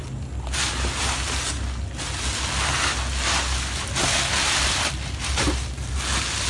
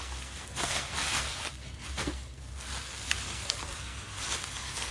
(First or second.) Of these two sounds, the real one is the first